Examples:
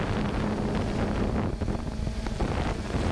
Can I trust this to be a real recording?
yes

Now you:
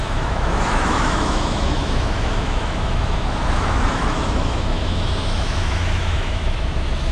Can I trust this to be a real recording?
no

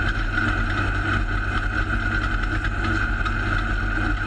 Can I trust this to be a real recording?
yes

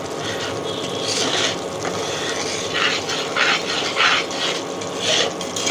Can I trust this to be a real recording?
yes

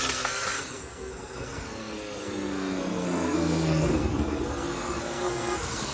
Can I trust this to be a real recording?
no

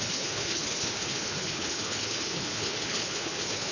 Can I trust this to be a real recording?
no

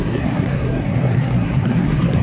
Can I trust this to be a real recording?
no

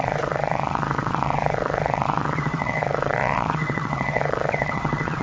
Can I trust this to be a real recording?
no